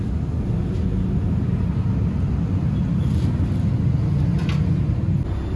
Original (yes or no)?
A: yes